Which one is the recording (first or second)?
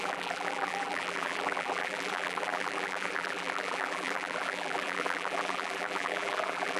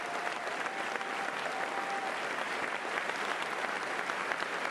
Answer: second